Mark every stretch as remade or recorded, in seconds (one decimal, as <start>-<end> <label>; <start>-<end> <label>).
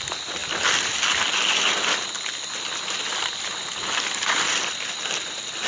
0.0-5.7 recorded